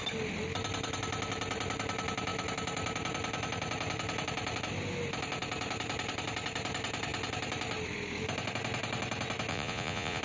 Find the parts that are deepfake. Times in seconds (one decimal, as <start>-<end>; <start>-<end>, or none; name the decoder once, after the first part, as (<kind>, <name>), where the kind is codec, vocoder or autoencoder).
9.5-10.2 (vocoder, Vocos)